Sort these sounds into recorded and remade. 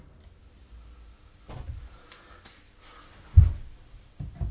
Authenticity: recorded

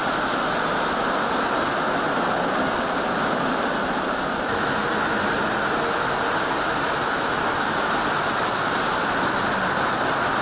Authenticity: recorded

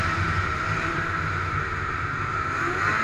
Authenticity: remade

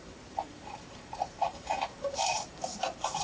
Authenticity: remade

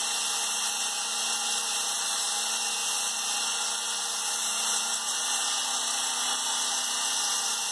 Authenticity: recorded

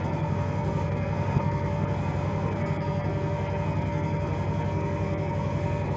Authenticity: remade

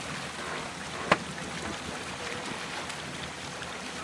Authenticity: remade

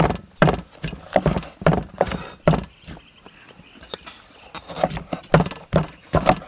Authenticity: recorded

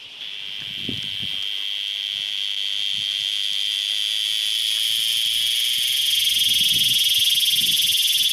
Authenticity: recorded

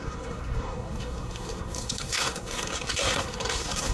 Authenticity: remade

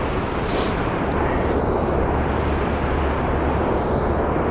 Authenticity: recorded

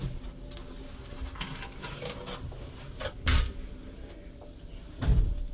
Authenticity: recorded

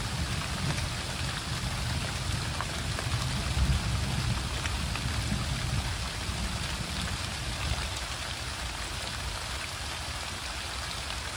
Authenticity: recorded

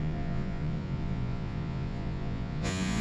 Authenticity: remade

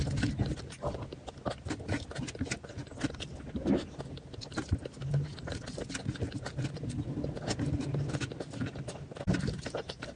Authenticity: recorded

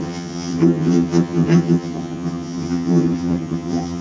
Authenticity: remade